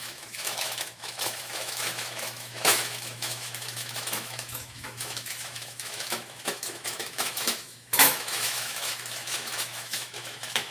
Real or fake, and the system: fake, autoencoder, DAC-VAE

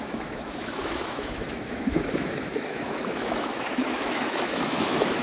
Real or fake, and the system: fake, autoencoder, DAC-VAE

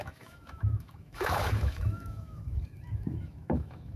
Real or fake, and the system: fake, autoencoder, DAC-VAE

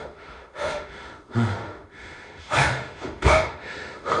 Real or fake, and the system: fake, autoencoder, DAC-VAE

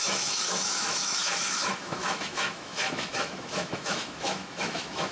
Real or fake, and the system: fake, autoencoder, DAC-VAE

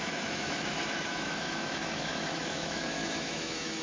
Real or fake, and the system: fake, autoencoder, DAC-VAE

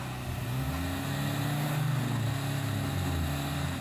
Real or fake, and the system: real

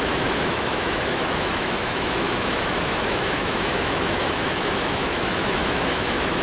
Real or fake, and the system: fake, autoencoder, DAC-VAE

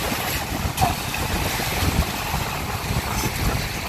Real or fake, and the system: real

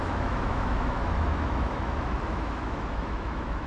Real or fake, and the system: fake, autoencoder, DAC-VAE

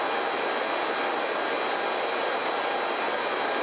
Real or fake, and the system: real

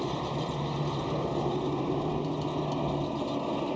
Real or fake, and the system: real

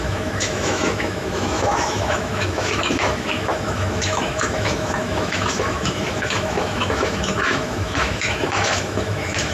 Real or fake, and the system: fake, autoencoder, DAC-VAE